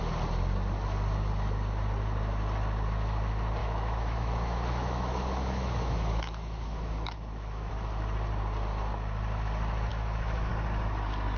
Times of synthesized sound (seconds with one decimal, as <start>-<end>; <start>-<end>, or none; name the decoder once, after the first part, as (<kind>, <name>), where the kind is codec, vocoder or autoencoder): 3.6-7.7 (autoencoder, DAC-VAE); 9.9-10.5